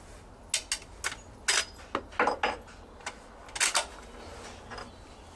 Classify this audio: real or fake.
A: real